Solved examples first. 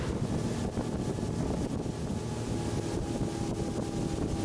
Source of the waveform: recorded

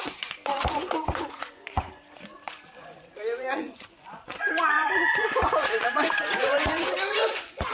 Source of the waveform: remade